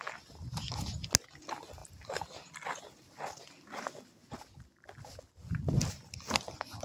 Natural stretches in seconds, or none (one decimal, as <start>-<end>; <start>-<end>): 0.0-6.8